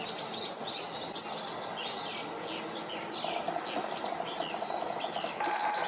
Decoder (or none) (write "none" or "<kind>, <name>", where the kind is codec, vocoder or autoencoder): none